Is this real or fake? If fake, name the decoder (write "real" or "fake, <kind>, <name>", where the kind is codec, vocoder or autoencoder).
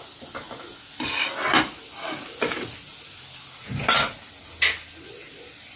real